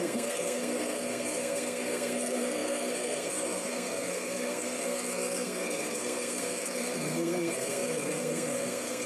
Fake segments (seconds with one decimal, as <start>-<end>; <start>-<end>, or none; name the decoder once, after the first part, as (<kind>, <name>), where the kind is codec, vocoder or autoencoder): 0.0-9.1 (codec, SNAC)